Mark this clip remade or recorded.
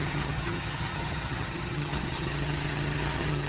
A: remade